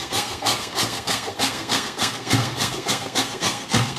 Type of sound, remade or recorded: remade